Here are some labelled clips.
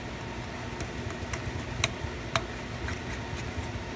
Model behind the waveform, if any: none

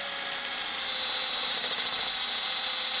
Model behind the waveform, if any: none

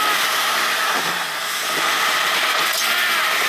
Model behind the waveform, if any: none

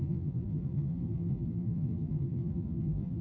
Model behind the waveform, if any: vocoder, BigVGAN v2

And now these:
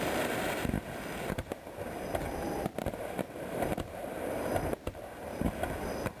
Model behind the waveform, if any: vocoder, BigVGAN v2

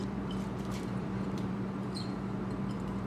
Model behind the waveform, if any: vocoder, BigVGAN v2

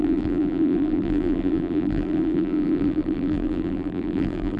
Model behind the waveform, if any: vocoder, BigVGAN v2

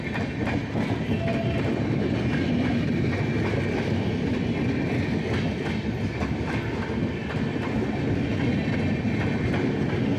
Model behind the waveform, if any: none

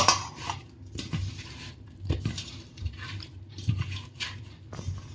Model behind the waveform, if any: vocoder, BigVGAN v2